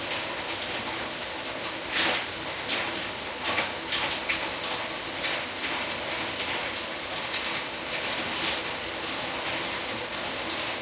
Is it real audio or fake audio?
real